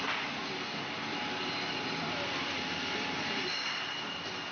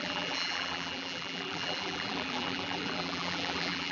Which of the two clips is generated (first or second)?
second